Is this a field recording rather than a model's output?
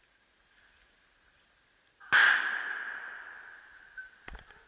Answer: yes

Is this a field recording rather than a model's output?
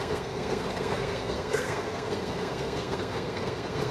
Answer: no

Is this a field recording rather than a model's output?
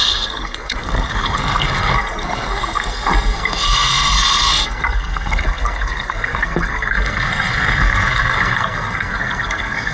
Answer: no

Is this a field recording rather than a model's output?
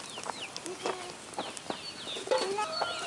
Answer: yes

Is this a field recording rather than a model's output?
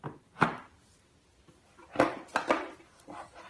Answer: yes